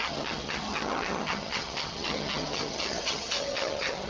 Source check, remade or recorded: remade